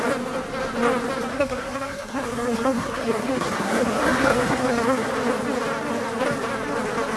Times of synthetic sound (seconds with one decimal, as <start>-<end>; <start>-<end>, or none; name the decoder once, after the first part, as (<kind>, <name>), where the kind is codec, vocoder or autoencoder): 1.3-5.1 (codec, SNAC)